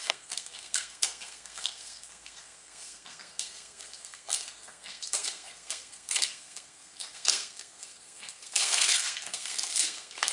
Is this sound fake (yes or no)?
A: yes